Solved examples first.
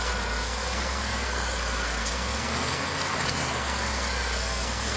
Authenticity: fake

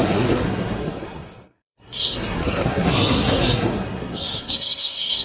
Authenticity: fake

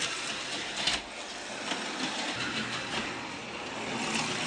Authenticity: real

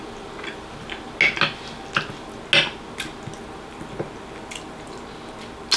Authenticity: real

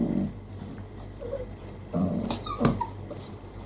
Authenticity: real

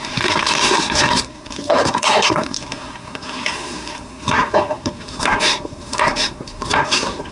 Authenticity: fake